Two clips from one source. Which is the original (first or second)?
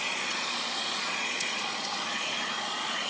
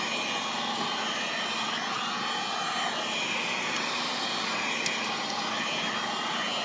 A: second